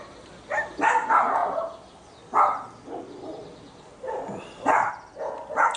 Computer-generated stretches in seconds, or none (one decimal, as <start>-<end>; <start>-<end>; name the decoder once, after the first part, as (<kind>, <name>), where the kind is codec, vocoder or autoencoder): none